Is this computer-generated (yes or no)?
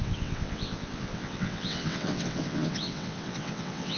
yes